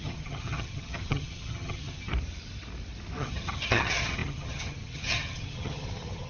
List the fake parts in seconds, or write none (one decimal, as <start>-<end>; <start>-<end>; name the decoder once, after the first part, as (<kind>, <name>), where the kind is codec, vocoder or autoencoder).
0.0-2.1 (vocoder, HiFi-GAN); 3.2-6.3